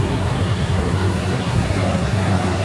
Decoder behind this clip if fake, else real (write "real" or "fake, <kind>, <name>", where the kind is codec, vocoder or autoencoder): fake, codec, SNAC